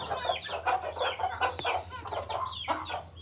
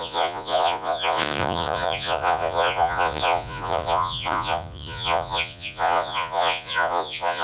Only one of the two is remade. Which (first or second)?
second